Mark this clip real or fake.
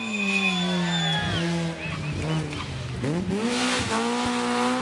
real